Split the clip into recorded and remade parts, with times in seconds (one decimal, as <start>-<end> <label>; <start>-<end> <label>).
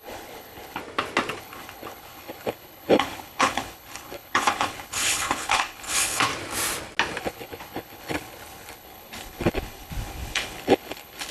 0.0-0.8 remade; 0.8-1.4 recorded; 1.4-6.3 remade; 6.3-7.2 recorded; 7.2-11.3 remade